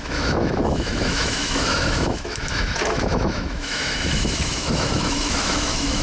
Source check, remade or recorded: remade